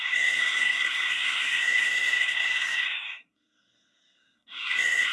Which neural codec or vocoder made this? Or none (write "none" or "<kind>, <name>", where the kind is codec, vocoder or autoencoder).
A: codec, SNAC